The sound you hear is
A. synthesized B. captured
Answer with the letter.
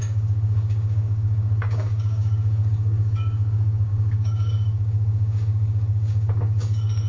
A